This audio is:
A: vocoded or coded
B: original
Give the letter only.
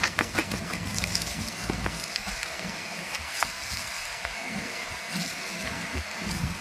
A